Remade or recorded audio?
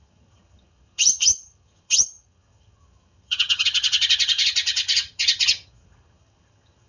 remade